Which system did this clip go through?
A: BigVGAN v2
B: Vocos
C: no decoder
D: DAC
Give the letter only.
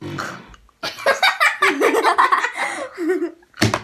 C